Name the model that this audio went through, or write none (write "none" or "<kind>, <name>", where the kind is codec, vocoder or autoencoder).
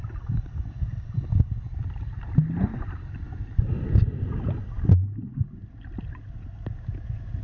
none